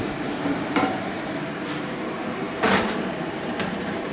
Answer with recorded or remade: remade